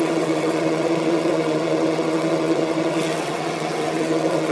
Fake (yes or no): yes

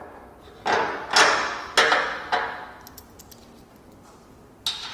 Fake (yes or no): no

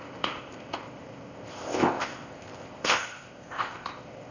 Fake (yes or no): yes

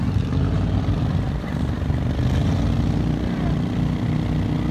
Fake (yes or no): no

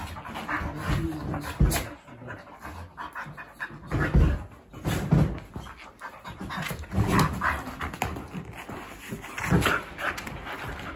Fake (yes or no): no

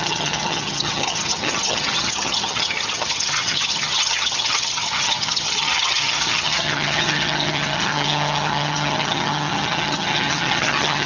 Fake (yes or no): yes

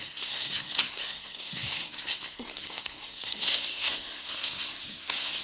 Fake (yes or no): yes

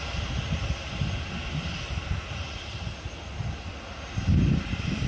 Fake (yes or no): yes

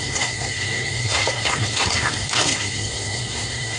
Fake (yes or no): yes